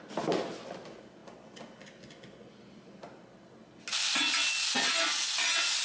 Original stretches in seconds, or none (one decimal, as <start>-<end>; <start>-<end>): 0.0-5.8